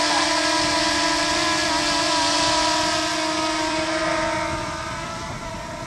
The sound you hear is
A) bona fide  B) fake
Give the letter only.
B